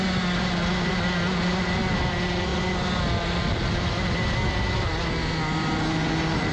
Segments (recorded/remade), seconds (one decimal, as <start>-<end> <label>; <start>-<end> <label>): 0.0-6.5 recorded